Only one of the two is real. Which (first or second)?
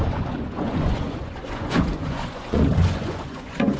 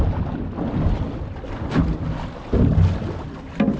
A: second